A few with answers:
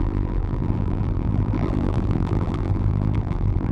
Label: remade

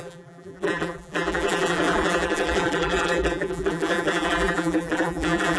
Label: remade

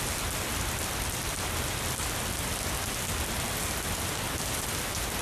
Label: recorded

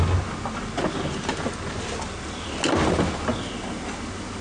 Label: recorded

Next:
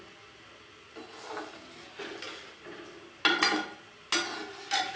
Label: recorded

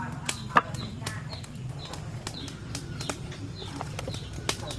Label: remade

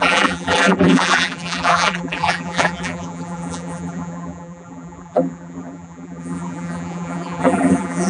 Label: remade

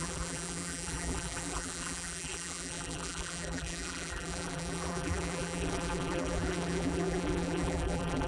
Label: remade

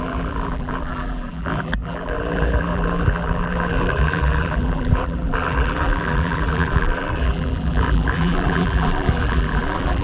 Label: remade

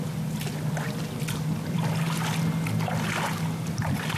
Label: recorded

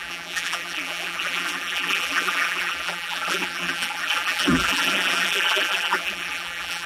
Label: remade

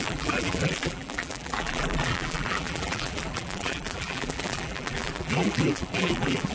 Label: remade